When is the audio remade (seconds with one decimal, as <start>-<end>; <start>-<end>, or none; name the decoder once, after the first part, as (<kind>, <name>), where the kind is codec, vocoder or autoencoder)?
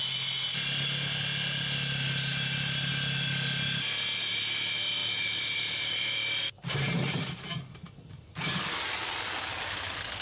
2.3-2.9 (vocoder, BigVGAN v2); 5.0-7.4